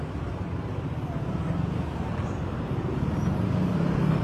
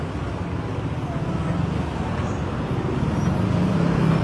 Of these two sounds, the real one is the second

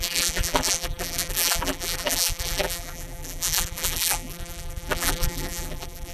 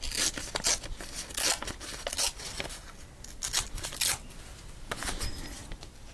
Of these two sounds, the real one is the second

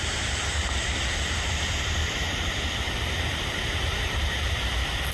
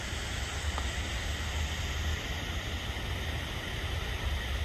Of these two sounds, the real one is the second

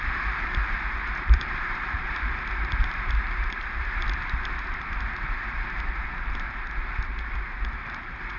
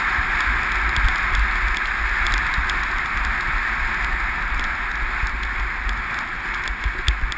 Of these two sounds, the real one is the second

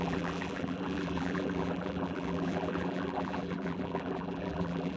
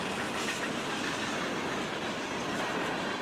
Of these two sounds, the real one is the second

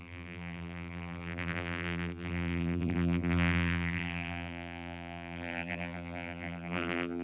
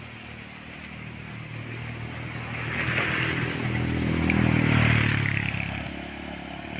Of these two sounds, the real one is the second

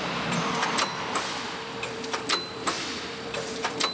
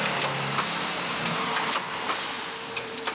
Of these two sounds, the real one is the second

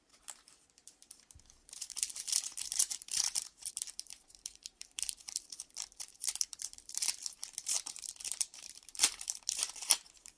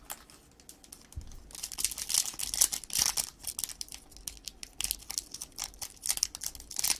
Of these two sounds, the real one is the second